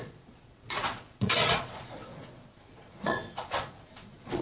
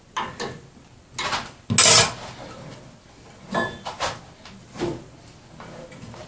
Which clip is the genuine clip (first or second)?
second